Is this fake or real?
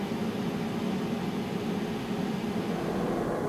real